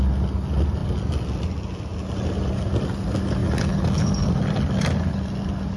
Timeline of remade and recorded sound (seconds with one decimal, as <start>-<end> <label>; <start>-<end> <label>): 0.0-5.8 recorded